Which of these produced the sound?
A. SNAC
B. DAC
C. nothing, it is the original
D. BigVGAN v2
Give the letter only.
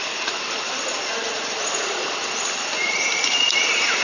D